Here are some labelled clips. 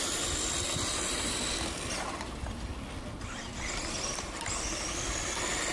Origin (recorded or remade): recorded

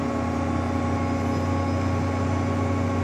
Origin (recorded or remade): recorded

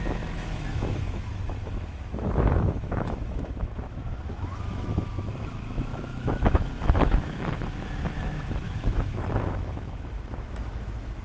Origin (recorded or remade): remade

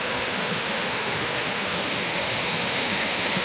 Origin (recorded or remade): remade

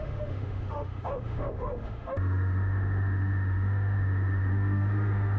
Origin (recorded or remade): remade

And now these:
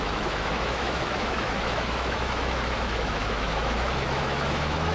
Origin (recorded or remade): remade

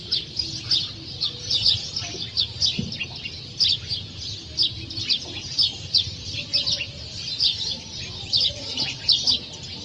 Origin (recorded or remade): recorded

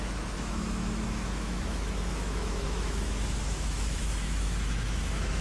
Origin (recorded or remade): remade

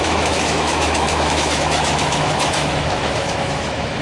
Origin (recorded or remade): remade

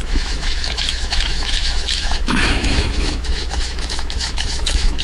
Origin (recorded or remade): remade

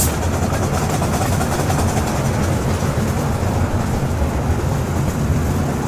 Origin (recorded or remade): recorded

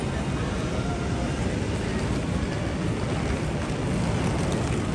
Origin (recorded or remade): recorded